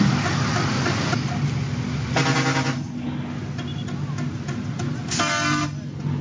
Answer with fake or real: real